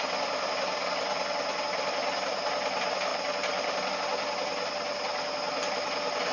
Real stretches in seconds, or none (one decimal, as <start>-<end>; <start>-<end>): 0.0-6.3